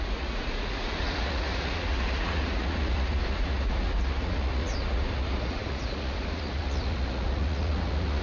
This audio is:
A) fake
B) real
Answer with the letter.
A